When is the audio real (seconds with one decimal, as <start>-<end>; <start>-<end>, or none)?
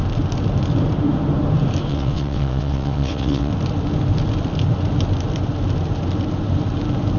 0.0-1.9; 3.5-7.2